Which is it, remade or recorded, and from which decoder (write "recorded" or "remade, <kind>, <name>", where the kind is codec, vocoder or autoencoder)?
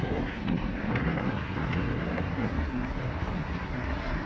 remade, codec, SNAC